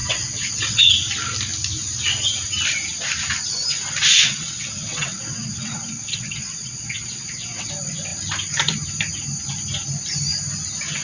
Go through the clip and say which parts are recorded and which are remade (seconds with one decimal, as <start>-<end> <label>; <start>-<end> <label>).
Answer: 0.0-0.9 remade; 0.9-4.1 recorded; 4.1-7.7 remade; 7.7-11.0 recorded

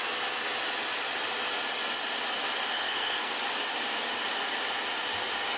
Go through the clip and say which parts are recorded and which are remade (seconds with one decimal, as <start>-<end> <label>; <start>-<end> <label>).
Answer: 0.0-2.7 recorded; 2.7-3.4 remade; 3.4-5.6 recorded